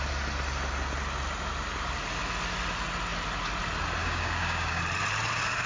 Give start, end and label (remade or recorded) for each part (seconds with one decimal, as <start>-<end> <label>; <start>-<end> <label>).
0.0-4.0 recorded; 4.0-4.8 remade; 4.8-5.7 recorded